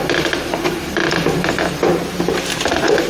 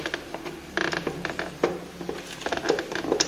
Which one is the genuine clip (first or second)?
second